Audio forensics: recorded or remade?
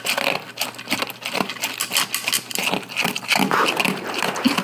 recorded